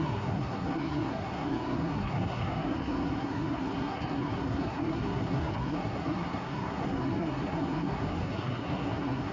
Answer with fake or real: fake